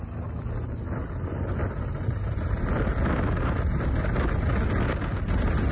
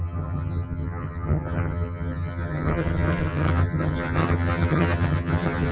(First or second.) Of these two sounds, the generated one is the second